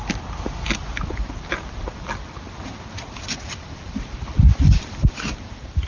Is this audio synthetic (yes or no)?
yes